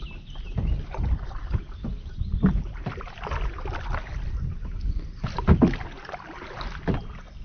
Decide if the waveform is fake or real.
real